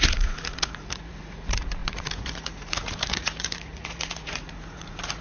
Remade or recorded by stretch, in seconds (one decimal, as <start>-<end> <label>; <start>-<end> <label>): 0.0-5.2 remade